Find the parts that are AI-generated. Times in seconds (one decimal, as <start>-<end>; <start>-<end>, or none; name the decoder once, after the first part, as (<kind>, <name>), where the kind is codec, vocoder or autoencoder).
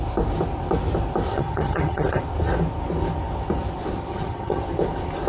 1.3-2.2 (vocoder, HiFi-GAN); 4.1-4.6